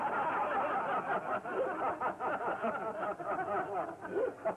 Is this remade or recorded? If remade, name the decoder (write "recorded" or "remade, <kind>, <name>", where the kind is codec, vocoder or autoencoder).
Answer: recorded